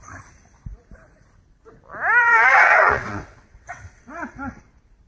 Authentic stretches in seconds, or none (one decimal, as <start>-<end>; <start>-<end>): 0.0-2.2; 4.6-5.1